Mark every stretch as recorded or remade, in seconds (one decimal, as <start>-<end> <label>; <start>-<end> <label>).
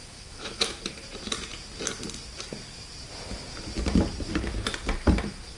0.0-0.8 remade; 0.8-5.6 recorded